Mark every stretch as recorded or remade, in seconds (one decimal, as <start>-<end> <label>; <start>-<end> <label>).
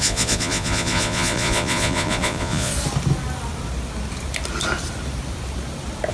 0.0-2.7 remade; 2.7-6.1 recorded